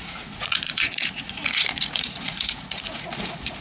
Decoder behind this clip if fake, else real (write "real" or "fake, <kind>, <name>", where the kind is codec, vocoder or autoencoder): fake, vocoder, Vocos